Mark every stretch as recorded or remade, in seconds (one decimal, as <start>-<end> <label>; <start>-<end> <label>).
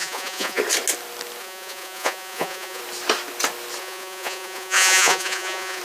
0.0-0.6 remade; 0.6-1.4 recorded; 1.4-2.8 remade; 2.8-3.8 recorded; 3.8-5.8 remade